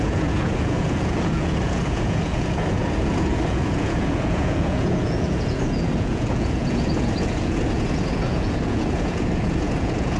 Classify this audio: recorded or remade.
remade